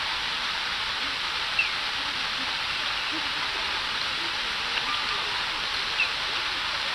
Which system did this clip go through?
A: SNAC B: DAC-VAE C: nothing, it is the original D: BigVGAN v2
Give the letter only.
C